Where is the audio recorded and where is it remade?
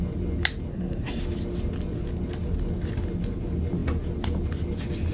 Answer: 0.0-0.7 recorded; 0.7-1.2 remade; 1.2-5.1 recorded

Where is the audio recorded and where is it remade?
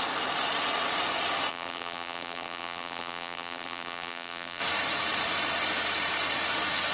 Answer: 0.0-1.5 recorded; 1.5-4.6 remade; 4.6-6.9 recorded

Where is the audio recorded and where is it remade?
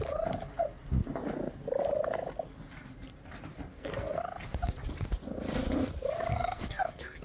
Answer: 0.0-3.7 recorded; 3.7-4.2 remade; 4.2-6.3 recorded; 6.3-7.2 remade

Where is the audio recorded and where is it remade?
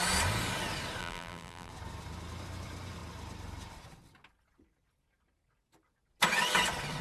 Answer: 0.0-1.0 recorded; 1.0-1.7 remade; 1.7-7.0 recorded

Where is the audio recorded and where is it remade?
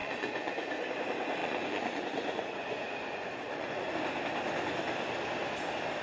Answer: 0.0-0.5 remade; 0.5-1.4 recorded; 1.4-3.9 remade; 3.9-6.0 recorded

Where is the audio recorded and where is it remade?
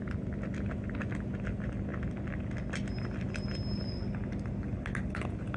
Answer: 0.0-5.6 recorded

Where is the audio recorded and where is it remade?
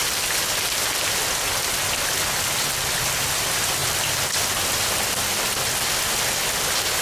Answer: 0.0-7.0 recorded